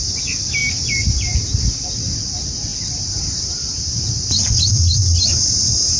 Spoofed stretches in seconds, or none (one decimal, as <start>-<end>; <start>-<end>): 2.7-6.0